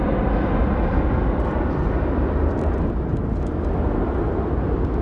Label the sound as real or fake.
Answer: real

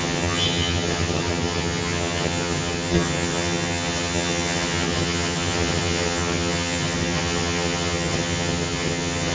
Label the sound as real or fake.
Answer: fake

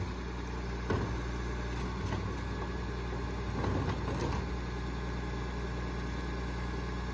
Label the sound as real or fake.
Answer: real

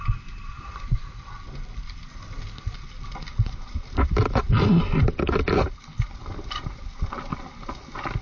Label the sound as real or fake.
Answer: real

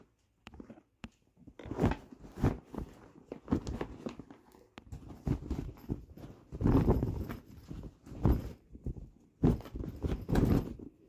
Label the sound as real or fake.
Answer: real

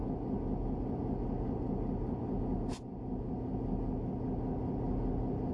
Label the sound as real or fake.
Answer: real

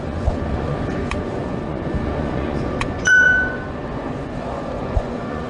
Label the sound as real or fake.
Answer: fake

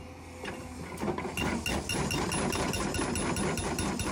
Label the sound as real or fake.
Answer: real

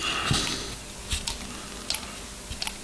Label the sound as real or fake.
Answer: real